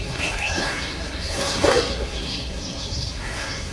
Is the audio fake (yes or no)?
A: yes